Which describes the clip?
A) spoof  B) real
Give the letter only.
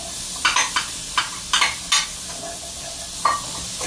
B